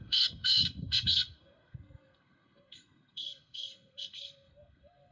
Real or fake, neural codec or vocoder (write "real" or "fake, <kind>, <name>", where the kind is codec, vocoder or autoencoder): fake, codec, SNAC